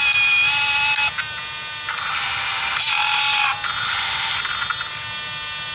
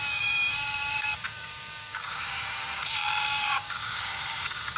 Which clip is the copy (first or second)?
second